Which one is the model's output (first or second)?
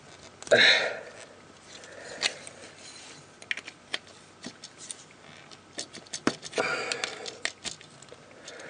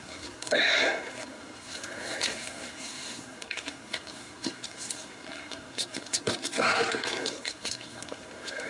second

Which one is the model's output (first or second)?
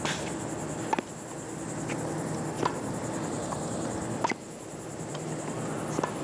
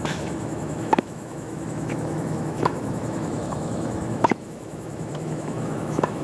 second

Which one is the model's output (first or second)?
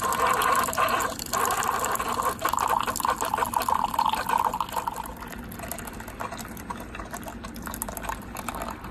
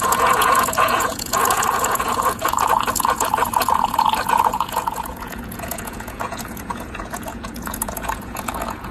second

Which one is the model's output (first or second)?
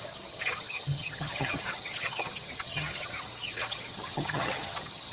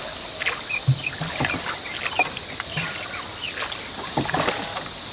first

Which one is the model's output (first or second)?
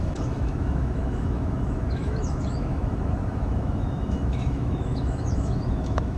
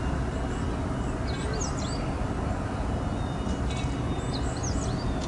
first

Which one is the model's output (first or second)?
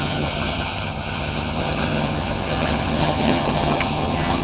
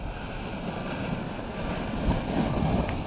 first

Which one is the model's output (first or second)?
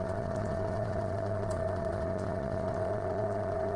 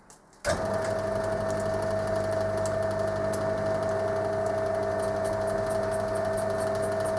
first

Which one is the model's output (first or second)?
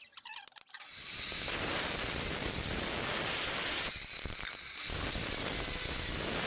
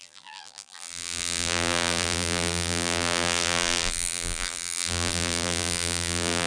second